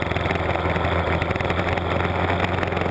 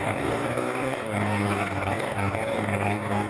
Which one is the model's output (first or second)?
second